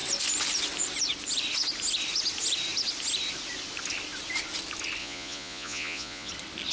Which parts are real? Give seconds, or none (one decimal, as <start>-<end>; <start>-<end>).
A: 0.0-5.0; 6.3-6.7